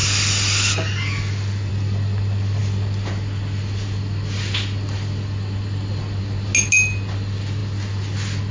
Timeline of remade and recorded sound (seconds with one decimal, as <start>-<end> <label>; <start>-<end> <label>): 0.0-8.5 recorded